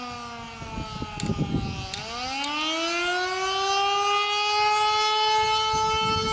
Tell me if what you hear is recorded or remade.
recorded